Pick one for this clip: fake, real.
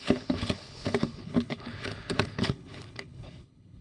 fake